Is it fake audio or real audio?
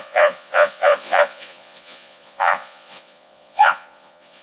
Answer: fake